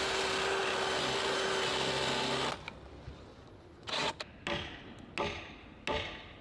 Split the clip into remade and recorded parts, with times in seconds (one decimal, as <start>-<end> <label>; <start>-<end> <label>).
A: 0.0-3.3 recorded; 3.3-4.1 remade; 4.1-6.4 recorded